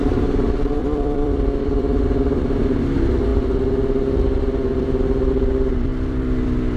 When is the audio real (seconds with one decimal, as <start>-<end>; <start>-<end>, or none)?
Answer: 0.0-0.8; 1.8-5.9